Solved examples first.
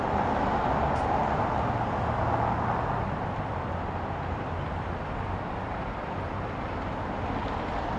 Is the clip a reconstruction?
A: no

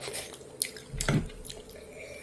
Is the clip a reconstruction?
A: no